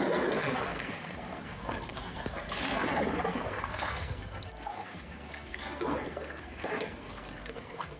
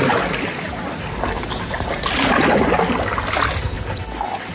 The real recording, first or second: second